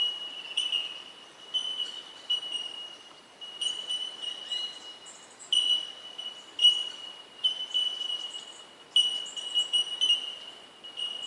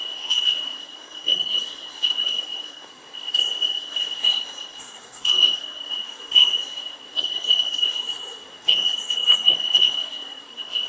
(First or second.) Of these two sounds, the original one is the first